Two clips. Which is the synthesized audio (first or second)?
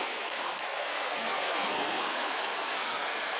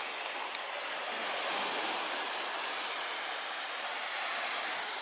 first